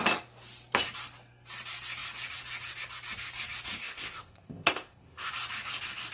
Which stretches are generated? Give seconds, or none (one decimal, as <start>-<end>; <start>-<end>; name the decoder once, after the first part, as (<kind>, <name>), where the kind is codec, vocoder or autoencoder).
3.8-5.3 (codec, ZipCodec)